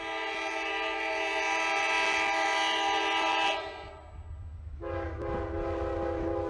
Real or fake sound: real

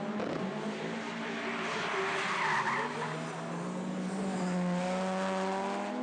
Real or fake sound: real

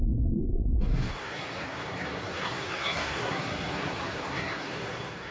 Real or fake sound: fake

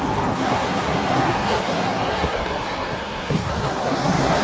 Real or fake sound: fake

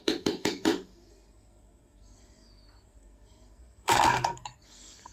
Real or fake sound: fake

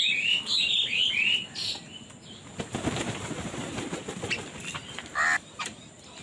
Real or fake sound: real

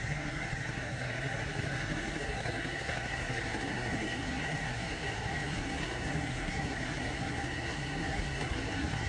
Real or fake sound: fake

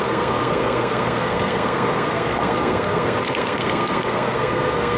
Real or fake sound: fake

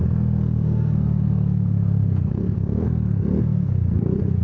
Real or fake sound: fake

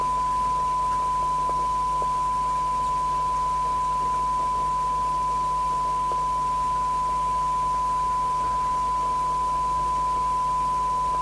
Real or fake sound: real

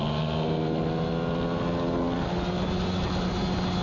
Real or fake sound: real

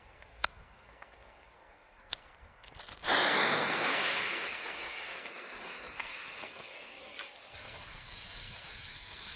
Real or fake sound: fake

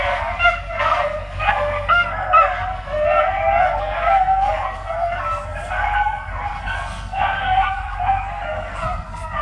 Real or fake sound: fake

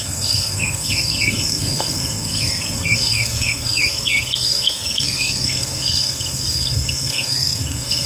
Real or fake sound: fake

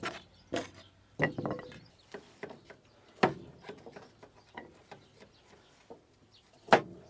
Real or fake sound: real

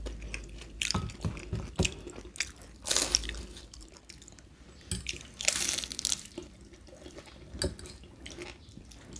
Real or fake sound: real